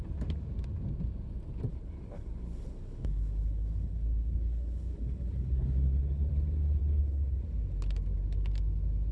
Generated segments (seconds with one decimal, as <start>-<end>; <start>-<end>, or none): 1.7-6.3; 6.8-7.4